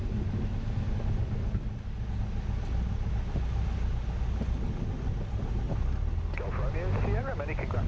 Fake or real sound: real